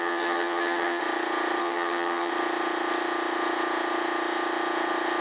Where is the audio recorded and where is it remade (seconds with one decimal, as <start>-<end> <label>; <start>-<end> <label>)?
0.0-1.0 remade; 1.0-1.6 recorded; 1.6-2.3 remade; 2.3-5.2 recorded